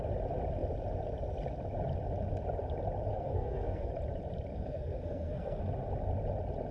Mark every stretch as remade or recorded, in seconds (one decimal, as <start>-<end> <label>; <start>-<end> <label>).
0.0-3.1 recorded; 3.1-3.9 remade; 3.9-4.5 recorded; 4.5-5.6 remade; 5.6-6.7 recorded